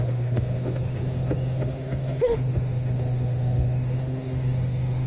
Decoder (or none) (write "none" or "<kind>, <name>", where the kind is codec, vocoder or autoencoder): autoencoder, DAC-VAE